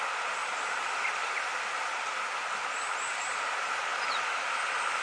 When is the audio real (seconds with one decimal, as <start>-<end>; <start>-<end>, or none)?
0.0-5.0